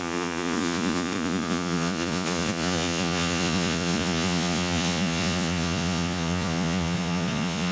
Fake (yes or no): yes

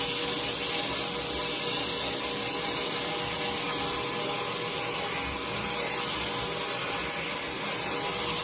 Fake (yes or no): no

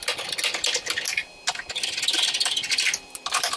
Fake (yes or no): no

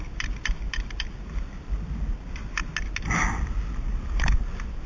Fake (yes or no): no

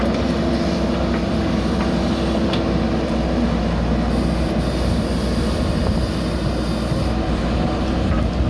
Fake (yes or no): no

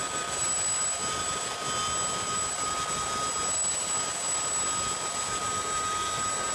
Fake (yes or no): no